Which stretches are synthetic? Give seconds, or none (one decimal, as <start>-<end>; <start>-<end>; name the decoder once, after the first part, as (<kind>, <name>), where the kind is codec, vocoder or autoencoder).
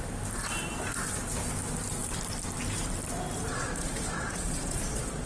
3.5-5.3 (vocoder, Vocos)